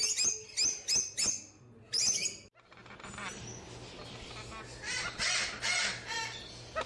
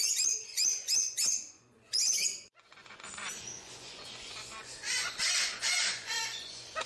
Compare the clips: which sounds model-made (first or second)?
second